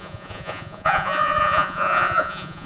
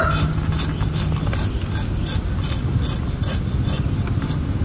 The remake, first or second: first